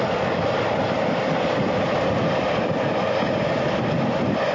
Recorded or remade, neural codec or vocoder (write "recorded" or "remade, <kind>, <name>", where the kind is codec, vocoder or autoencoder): recorded